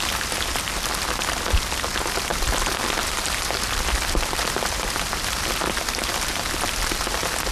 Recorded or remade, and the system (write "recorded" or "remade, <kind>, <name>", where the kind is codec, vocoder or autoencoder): recorded